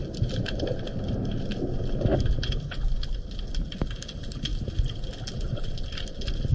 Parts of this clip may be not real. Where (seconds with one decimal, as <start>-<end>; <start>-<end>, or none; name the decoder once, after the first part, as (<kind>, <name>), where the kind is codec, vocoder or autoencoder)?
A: 0.0-0.7 (vocoder, BigVGAN v2)